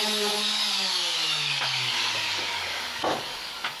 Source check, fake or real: fake